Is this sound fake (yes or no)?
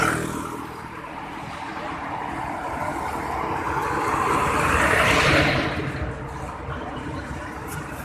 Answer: no